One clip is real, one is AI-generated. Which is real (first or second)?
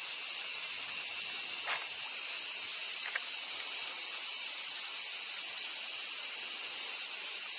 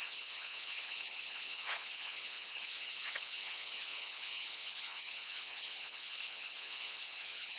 first